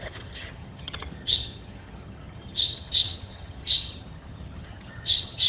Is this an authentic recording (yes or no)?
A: no